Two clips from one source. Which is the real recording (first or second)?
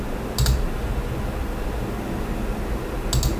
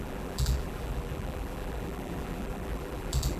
first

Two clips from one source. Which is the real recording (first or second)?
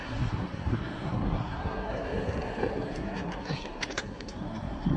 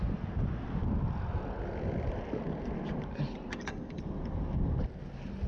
second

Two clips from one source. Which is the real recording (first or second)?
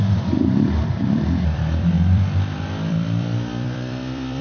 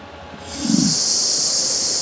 second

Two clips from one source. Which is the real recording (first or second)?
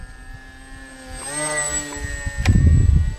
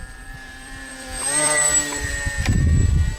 first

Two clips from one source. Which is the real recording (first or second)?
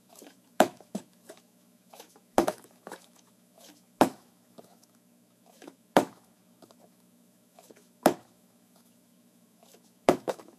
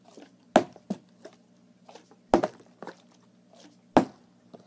second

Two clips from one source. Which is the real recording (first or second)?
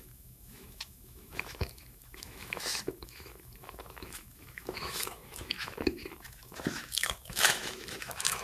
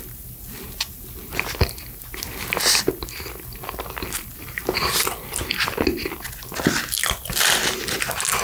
second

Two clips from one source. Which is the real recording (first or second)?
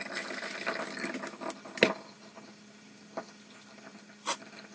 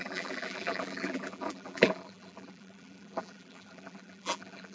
first